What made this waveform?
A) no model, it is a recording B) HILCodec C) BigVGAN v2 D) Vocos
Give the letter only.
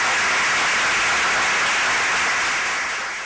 A